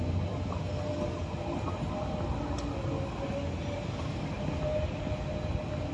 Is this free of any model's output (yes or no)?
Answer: yes